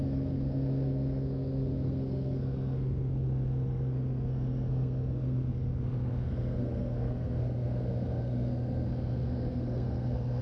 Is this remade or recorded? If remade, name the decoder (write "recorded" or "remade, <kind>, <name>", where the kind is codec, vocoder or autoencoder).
remade, codec, SNAC